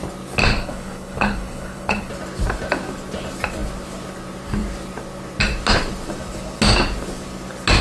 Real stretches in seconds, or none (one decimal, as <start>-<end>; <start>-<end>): 0.0-0.5; 2.1-7.8